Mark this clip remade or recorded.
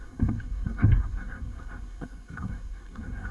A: remade